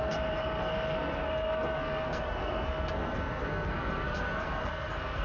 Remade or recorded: remade